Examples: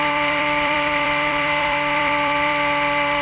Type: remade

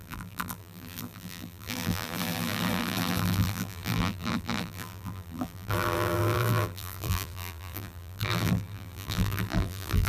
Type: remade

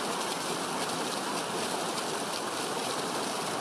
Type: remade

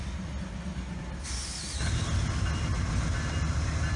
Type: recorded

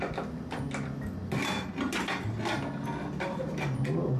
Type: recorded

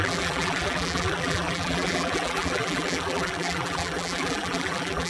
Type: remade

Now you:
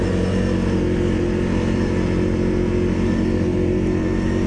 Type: recorded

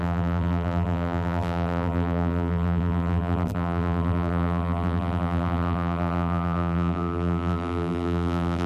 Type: remade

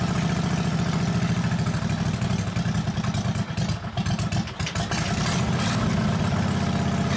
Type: recorded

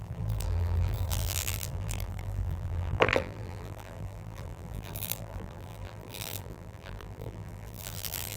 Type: remade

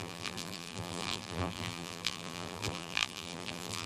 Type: remade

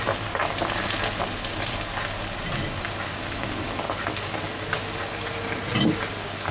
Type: recorded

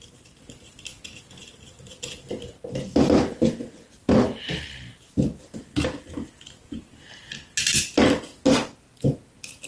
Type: recorded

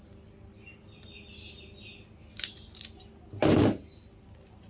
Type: recorded